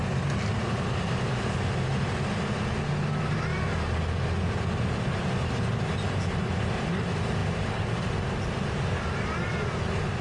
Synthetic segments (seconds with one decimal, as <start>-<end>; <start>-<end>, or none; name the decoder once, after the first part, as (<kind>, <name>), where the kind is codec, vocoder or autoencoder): 7.4-8.0 (vocoder, BigVGAN v2)